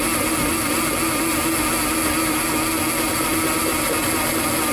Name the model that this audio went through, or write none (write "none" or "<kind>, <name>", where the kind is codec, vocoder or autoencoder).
none